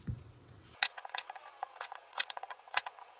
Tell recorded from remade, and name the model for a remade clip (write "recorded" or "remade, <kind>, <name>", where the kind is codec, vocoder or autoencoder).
remade, vocoder, WaveNeXt